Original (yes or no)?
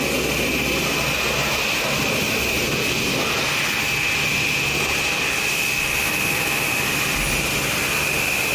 yes